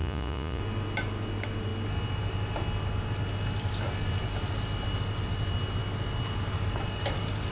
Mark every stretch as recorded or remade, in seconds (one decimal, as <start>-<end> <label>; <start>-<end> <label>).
0.0-0.6 remade; 0.6-7.5 recorded